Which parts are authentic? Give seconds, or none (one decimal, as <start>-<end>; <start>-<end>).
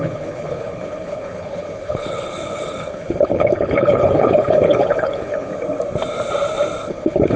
5.5-6.9